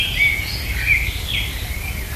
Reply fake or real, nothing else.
real